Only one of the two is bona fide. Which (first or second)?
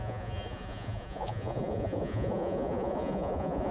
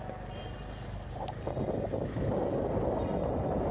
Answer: second